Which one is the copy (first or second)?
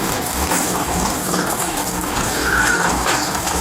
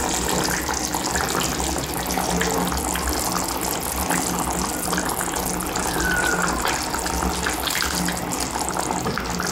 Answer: first